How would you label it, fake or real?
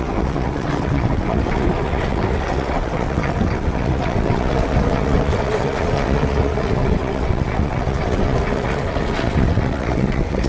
fake